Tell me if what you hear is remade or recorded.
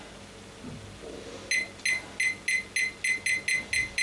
recorded